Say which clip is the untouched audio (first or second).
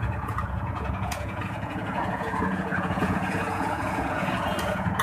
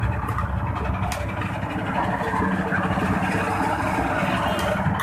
second